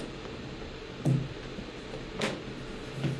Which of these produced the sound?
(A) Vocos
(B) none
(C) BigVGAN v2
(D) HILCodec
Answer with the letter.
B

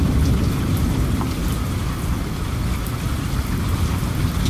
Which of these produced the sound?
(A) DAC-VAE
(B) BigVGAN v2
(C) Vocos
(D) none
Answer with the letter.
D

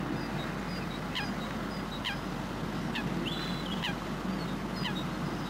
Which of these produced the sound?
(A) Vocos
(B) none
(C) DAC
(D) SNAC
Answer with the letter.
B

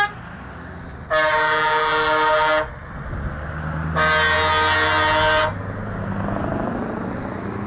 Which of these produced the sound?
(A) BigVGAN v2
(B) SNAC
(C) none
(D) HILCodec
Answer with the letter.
C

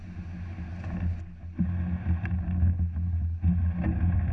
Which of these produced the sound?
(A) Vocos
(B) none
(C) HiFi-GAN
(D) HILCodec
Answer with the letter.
B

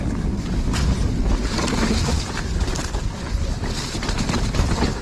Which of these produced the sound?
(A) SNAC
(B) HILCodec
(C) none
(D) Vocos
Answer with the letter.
C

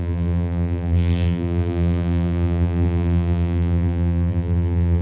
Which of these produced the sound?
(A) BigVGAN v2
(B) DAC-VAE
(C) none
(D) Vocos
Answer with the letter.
A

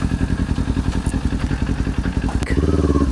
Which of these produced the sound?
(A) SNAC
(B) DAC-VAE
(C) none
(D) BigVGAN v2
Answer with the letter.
C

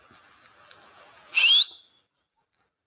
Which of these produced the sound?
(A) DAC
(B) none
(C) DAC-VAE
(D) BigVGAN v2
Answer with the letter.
D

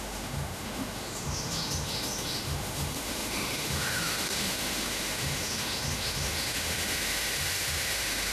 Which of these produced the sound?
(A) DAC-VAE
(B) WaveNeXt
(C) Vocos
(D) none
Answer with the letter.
A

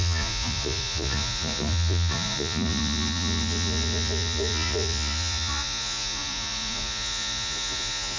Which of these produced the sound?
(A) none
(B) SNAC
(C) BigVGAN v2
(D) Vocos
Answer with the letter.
D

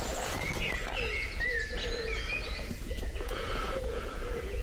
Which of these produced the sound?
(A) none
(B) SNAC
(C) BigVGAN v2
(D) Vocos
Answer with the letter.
D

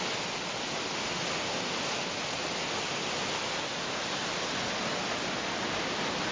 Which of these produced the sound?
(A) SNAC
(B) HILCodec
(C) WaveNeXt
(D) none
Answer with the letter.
D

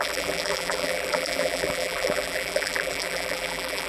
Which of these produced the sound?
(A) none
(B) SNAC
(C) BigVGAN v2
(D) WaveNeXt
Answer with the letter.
C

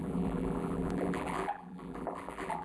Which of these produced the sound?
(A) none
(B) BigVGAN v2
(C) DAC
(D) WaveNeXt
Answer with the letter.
B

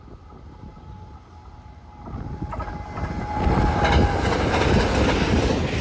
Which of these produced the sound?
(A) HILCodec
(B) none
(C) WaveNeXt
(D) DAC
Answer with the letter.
B